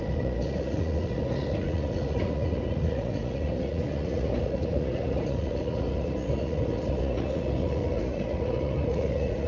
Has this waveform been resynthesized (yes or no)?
yes